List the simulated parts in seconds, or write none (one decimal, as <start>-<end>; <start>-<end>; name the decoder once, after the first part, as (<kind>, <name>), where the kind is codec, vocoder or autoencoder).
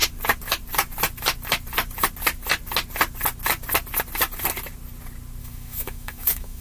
5.4-6.6 (autoencoder, DAC-VAE)